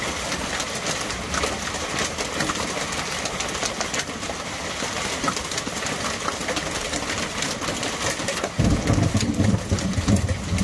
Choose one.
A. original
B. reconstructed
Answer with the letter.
A